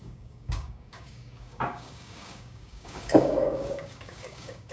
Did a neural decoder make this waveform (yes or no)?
yes